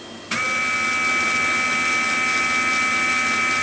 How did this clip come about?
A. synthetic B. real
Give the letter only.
B